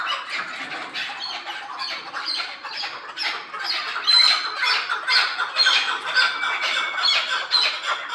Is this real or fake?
real